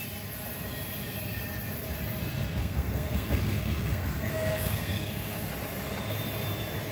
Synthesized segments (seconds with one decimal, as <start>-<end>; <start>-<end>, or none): 2.6-5.5